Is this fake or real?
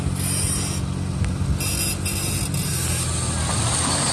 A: real